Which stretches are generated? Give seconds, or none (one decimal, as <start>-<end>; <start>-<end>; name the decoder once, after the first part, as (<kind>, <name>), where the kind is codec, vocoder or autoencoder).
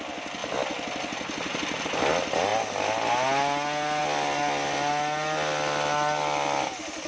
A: none